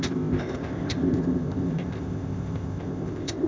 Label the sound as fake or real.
fake